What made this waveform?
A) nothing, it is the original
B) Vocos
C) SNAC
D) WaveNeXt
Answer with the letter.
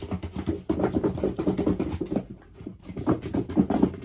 A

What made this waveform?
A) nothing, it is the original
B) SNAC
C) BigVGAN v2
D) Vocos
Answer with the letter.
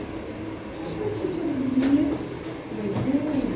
A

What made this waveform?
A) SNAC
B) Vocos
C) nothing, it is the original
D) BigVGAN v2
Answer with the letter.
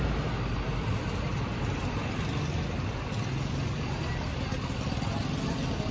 C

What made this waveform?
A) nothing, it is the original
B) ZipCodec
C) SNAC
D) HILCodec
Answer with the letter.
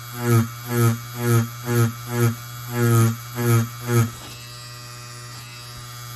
A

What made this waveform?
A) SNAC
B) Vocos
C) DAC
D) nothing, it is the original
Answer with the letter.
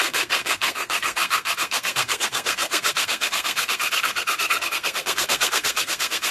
A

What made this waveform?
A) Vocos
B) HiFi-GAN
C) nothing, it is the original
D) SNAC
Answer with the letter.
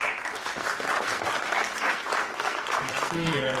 D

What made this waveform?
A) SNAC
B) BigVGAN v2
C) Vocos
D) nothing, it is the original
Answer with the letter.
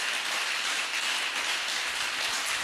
D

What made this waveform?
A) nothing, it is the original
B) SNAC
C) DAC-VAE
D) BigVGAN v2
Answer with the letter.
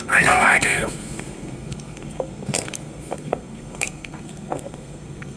B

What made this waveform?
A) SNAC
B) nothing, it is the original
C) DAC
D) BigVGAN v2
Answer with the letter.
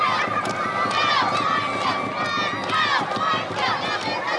B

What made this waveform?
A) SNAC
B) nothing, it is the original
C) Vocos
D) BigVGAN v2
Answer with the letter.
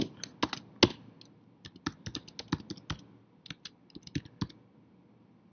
B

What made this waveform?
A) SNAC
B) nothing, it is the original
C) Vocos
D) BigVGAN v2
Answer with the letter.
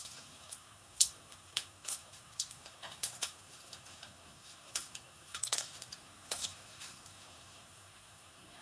A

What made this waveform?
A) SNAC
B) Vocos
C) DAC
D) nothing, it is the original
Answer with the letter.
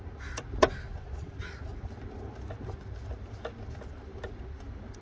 D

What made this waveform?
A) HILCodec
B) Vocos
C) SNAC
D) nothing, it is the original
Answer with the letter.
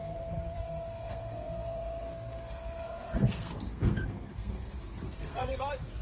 C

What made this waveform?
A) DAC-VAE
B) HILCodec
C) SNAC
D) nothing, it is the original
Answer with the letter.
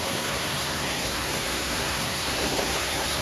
C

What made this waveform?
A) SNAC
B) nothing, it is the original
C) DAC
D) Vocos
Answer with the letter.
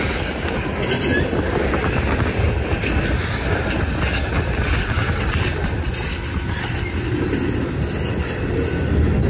B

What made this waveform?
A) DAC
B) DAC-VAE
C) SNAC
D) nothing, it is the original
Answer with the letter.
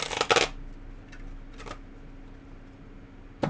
D